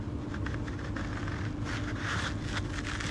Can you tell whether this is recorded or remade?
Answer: recorded